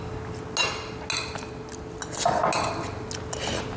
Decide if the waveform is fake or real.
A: real